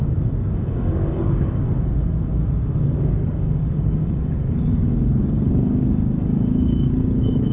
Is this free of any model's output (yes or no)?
no